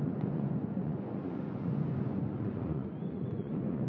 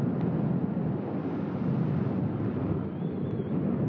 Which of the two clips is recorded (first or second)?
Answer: second